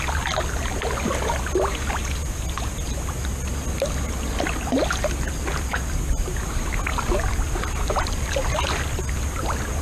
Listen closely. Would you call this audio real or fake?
real